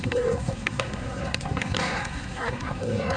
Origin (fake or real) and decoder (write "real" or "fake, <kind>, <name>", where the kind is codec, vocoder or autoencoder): fake, codec, SNAC